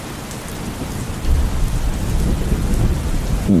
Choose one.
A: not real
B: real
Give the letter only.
B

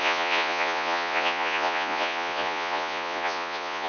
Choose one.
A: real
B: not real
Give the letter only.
B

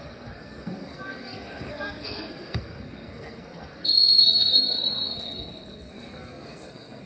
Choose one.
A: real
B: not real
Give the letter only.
B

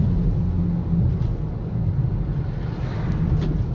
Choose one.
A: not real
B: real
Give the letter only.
B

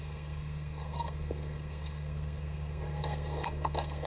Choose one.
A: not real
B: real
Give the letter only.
A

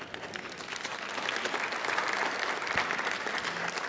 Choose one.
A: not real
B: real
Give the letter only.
B